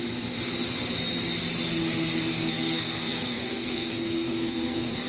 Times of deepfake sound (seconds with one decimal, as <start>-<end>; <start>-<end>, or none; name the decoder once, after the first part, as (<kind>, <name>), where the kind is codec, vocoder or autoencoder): 2.3-5.1 (codec, SNAC)